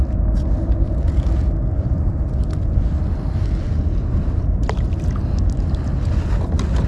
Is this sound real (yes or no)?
yes